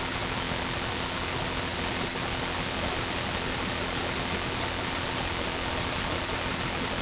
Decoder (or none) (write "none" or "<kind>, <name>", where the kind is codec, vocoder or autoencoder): vocoder, WaveNeXt